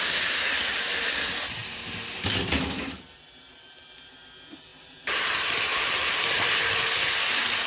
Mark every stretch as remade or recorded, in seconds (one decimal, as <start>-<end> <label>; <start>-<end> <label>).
0.0-4.7 recorded; 4.7-6.6 remade; 6.6-7.7 recorded

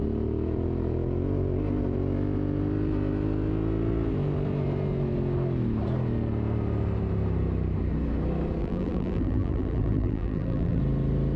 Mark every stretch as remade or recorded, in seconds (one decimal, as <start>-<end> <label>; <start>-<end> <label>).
0.0-8.6 recorded; 8.6-10.8 remade; 10.8-11.4 recorded

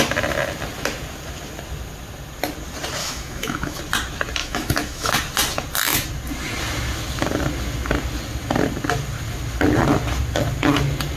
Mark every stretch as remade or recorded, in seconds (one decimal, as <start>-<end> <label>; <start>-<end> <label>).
0.0-3.0 recorded; 3.0-3.8 remade; 3.8-4.4 recorded; 4.4-5.1 remade; 5.1-11.2 recorded

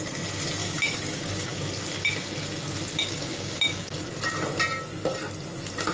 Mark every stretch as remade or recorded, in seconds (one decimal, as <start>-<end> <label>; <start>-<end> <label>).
0.0-0.6 recorded; 0.6-1.6 remade; 1.6-3.0 recorded; 3.0-4.0 remade; 4.0-5.9 recorded

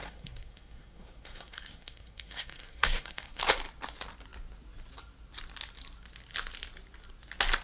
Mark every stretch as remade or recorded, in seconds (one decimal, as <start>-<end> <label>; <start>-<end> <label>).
0.0-3.4 remade; 3.4-7.6 recorded